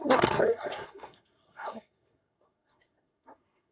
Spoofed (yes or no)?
yes